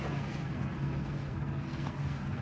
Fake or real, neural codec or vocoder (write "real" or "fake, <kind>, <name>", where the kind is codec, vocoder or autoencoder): fake, codec, SNAC